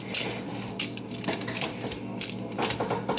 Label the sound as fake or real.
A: real